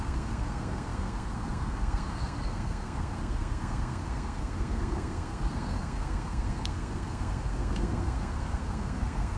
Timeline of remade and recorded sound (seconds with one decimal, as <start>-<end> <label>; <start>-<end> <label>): 0.0-9.4 remade